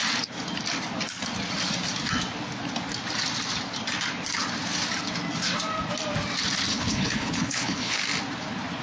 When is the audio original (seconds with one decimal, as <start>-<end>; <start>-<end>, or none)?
0.0-6.7; 8.0-8.8

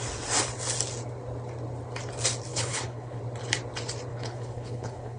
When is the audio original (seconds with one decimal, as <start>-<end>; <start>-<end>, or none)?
0.0-2.5; 3.2-4.1

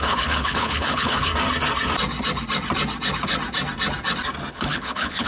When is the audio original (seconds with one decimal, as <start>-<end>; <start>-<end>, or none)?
1.3-4.5

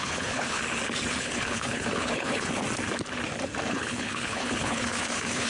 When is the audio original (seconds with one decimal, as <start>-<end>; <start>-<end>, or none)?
0.6-1.1; 2.5-3.7

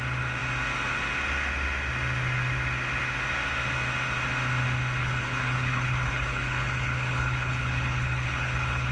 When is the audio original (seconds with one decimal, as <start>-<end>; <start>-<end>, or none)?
0.0-5.0

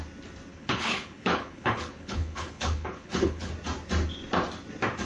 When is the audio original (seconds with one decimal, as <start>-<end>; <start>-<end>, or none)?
0.0-0.5; 3.5-5.0

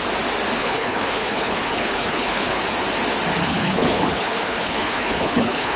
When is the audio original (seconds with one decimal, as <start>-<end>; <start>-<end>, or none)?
0.0-0.6; 2.6-3.4

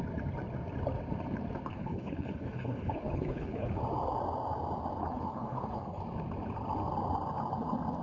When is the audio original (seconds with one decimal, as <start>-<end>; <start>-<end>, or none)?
0.0-1.7; 3.8-5.0; 6.0-8.0